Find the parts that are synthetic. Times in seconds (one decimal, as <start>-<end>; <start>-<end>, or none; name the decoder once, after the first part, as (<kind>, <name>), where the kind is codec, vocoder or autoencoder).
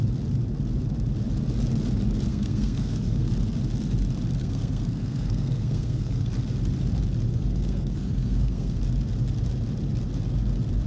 2.3-3.3 (codec, SNAC); 4.4-6.3; 7.3-8.8